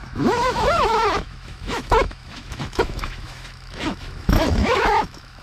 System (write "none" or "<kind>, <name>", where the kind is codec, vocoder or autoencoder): autoencoder, DAC-VAE